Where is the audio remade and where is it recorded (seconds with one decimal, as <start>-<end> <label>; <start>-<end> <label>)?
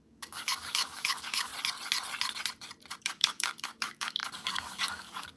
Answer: 0.0-1.5 remade; 1.5-3.0 recorded; 3.0-5.4 remade